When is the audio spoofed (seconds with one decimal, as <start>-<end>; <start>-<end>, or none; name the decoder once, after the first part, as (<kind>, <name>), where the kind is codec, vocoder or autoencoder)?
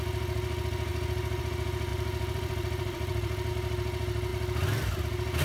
1.9-3.5 (vocoder, BigVGAN v2)